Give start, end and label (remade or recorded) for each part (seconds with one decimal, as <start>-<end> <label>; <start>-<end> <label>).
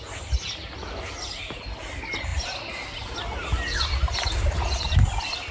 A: 0.0-5.5 recorded